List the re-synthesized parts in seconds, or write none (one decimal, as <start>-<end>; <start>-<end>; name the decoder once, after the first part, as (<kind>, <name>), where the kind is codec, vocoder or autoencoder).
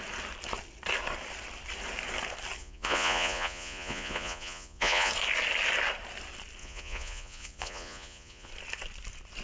2.6-5.1 (vocoder, Vocos); 6.6-8.5